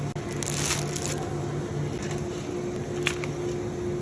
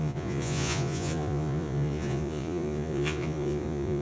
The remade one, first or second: second